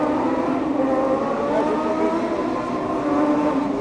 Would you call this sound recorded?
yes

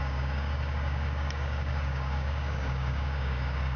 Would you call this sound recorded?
no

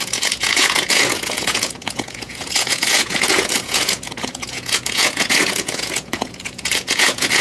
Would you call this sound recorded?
no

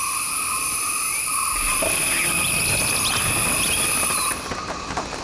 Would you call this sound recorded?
yes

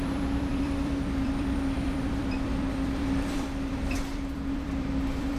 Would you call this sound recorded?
no